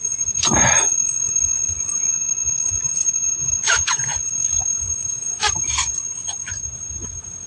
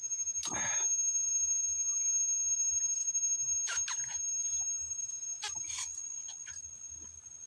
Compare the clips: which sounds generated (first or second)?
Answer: first